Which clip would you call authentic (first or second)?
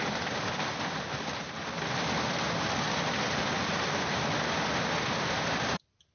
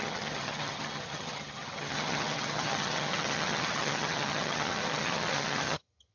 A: first